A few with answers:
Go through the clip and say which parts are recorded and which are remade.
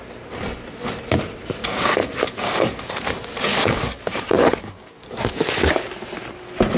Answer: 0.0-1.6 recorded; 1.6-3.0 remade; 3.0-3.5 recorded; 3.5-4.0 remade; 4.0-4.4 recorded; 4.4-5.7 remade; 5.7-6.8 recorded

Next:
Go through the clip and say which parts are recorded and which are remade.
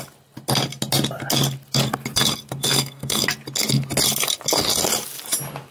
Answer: 0.0-2.6 recorded; 2.6-3.2 remade; 3.2-5.7 recorded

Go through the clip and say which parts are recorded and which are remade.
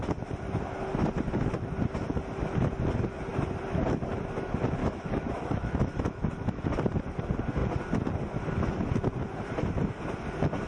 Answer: 0.0-4.8 recorded; 4.8-6.6 remade; 6.6-10.7 recorded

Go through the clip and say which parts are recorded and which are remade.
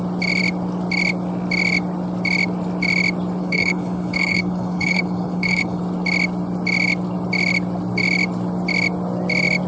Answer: 0.0-3.4 recorded; 3.4-5.8 remade; 5.8-9.7 recorded